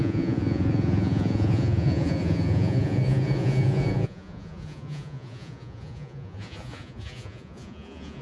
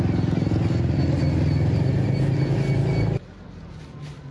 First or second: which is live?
second